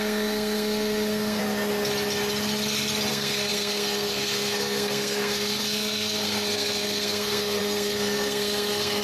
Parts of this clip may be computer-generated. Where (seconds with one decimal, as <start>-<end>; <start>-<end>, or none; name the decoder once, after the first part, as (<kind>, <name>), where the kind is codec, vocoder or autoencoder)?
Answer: 0.0-1.4 (codec, SNAC); 3.1-9.0